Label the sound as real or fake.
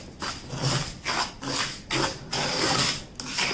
real